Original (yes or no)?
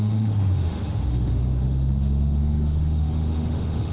no